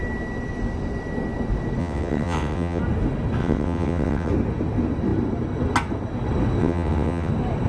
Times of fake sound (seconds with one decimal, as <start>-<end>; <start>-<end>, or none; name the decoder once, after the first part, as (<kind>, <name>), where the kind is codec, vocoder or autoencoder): 1.8-2.8 (vocoder, WaveNeXt); 3.4-4.3; 6.6-7.3